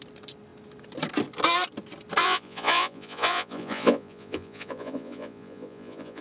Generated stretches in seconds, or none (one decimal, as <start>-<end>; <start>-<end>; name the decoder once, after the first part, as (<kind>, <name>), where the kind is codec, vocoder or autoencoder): 2.2-6.2 (vocoder, Vocos)